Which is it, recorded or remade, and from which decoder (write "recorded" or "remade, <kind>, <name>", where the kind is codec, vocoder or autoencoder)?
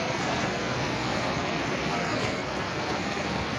remade, codec, SNAC